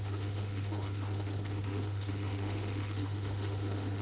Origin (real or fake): fake